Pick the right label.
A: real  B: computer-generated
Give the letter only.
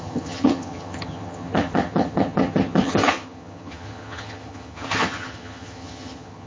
B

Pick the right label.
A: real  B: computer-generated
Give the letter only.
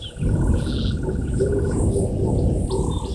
A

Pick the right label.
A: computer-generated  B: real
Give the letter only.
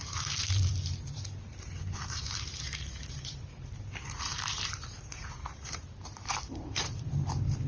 A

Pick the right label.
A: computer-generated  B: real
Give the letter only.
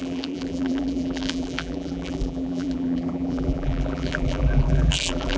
A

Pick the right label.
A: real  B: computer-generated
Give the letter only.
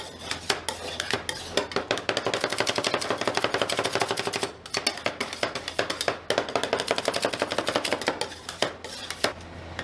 A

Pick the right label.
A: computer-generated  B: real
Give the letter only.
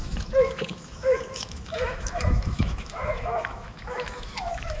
A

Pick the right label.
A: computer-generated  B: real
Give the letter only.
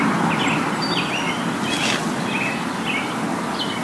B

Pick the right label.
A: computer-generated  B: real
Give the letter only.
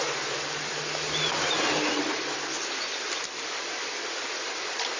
B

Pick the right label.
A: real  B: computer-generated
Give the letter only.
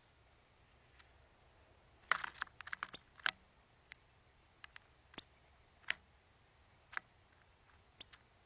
A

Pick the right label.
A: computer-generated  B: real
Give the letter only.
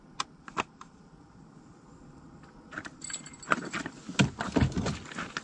B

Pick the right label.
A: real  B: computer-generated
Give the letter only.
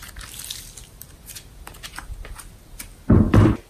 A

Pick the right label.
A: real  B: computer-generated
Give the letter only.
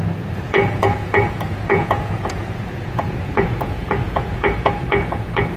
B